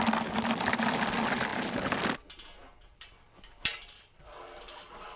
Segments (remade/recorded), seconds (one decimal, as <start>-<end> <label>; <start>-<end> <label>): 0.0-2.6 recorded; 2.6-5.2 remade